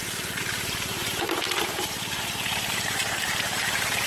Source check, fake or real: fake